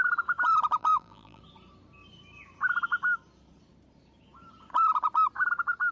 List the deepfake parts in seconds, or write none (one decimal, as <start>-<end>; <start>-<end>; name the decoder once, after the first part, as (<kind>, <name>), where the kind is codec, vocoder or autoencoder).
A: 0.8-1.4 (vocoder, BigVGAN v2)